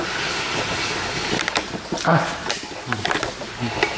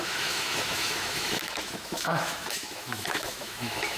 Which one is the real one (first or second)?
first